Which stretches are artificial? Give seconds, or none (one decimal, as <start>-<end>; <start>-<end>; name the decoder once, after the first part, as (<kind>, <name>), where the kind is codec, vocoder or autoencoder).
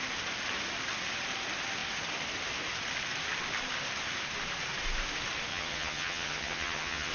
5.5-7.1 (vocoder, HiFi-GAN)